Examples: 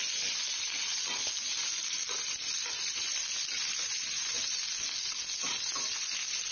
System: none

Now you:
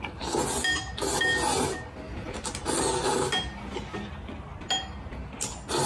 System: none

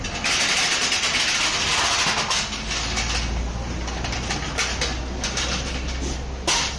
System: none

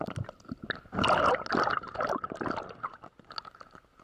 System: none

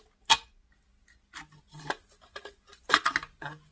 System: none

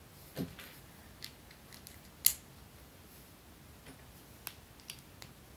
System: none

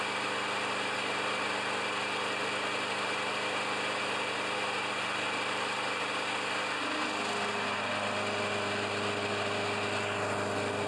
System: none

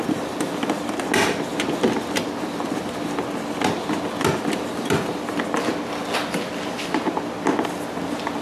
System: none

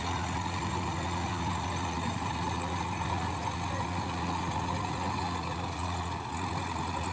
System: vocoder, Vocos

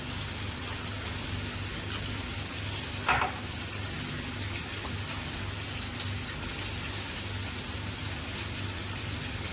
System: none